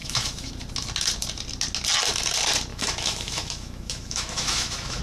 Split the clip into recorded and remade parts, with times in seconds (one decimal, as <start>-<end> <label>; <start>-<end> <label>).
0.0-0.5 remade; 0.5-2.7 recorded; 2.7-5.0 remade